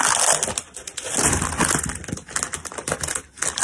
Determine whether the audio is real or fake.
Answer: real